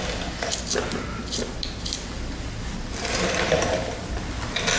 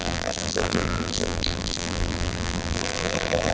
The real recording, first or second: first